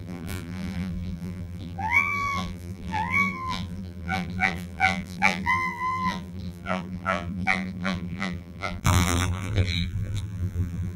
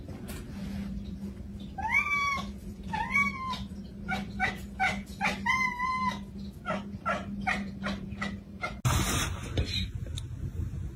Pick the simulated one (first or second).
first